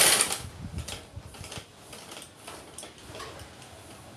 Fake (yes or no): no